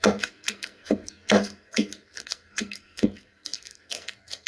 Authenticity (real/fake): fake